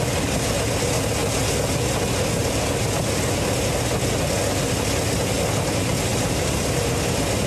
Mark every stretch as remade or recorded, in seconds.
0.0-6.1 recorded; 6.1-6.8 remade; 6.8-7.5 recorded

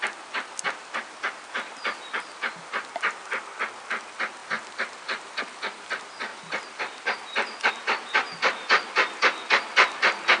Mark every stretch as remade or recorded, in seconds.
0.0-6.3 recorded; 6.3-7.7 remade; 7.7-10.4 recorded

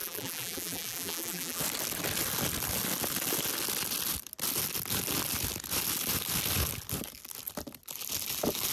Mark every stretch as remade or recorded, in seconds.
0.0-1.6 remade; 1.6-8.7 recorded

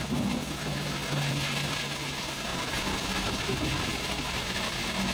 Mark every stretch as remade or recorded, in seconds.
0.0-2.5 recorded; 2.5-3.4 remade; 3.4-3.9 recorded; 3.9-4.4 remade; 4.4-5.1 recorded

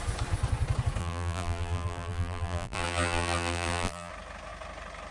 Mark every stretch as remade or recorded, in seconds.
0.0-1.0 recorded; 1.0-4.1 remade; 4.1-5.1 recorded

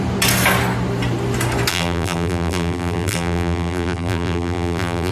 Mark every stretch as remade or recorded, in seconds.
0.0-1.7 recorded; 1.7-5.1 remade